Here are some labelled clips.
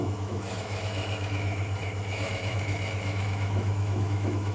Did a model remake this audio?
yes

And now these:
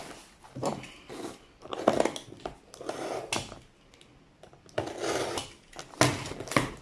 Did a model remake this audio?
no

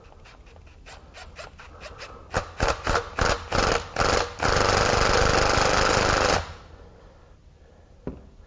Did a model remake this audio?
no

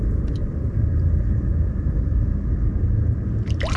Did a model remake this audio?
no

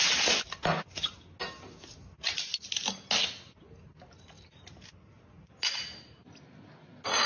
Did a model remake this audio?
no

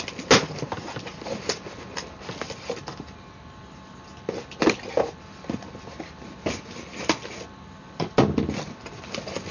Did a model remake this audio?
no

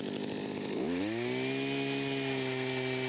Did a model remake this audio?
no